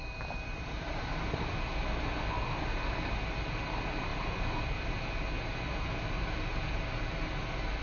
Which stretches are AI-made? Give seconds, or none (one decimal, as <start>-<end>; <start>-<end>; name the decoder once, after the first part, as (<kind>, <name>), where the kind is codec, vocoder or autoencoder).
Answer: 0.0-1.7 (vocoder, BigVGAN v2); 4.1-5.1; 5.5-6.5